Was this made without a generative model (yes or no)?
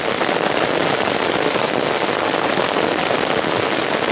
yes